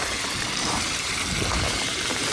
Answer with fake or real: fake